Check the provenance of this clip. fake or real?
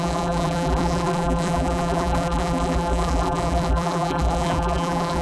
fake